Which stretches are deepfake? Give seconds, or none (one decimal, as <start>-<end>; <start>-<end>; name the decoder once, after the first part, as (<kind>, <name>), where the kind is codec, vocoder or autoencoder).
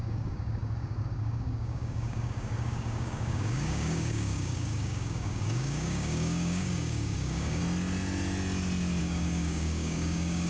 0.0-7.6 (codec, DAC); 9.0-10.5